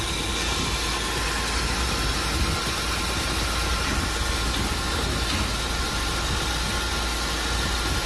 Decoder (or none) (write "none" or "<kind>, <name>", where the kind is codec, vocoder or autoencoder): none